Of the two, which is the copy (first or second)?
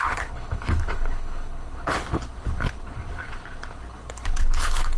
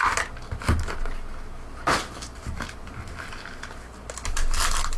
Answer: first